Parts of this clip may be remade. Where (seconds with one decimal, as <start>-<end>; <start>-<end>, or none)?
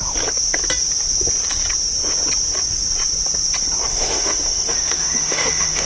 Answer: 3.9-5.9